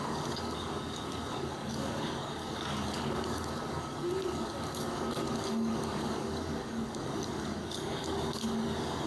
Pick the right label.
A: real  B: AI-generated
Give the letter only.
B